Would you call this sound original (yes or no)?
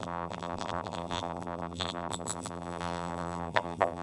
no